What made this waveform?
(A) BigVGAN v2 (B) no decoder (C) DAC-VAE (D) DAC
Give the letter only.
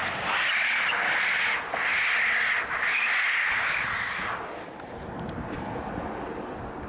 B